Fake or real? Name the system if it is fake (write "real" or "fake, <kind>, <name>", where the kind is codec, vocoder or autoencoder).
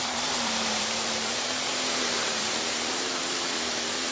fake, vocoder, BigVGAN v2